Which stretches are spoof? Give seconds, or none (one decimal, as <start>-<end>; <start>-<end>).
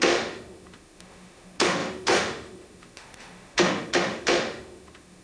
0.0-5.2